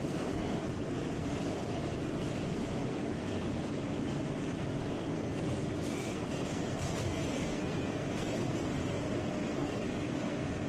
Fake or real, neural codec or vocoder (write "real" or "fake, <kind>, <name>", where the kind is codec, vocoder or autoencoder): fake, codec, SNAC